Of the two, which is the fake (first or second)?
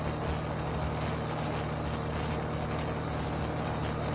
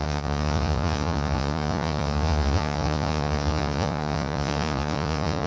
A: second